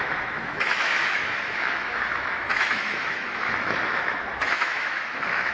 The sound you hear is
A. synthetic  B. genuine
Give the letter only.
A